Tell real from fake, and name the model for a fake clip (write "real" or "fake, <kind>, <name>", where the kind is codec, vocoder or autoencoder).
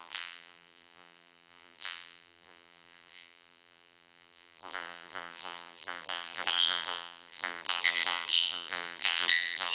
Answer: fake, vocoder, BigVGAN v2